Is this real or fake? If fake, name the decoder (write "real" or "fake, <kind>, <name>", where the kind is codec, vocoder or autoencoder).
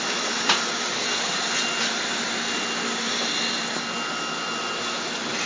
real